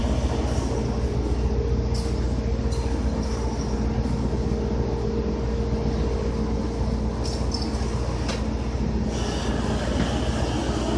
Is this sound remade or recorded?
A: recorded